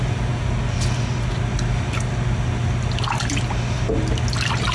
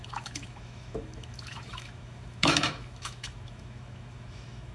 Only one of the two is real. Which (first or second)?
first